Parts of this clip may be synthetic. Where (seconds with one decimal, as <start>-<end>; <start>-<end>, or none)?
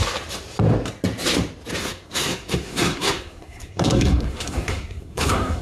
1.8-5.6